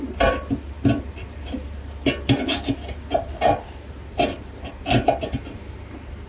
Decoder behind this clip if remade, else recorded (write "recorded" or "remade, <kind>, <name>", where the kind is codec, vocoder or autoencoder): recorded